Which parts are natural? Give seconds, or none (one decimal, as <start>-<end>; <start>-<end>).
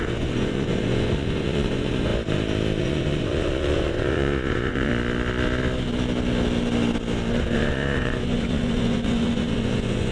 2.1-2.8; 4.9-7.3